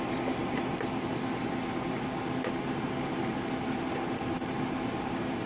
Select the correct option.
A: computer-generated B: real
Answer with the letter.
B